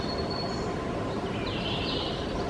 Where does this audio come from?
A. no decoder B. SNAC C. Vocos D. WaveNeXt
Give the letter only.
A